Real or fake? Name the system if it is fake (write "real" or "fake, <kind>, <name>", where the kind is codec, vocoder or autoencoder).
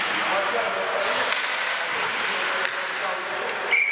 real